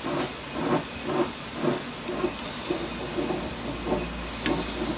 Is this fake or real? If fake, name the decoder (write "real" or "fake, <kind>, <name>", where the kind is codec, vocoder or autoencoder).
real